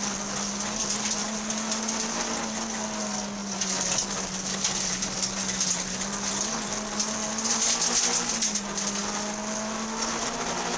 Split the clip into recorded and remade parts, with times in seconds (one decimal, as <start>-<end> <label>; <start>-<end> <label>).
0.0-10.8 recorded